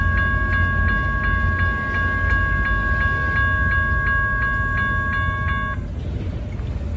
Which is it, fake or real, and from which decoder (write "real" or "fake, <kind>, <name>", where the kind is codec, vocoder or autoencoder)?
real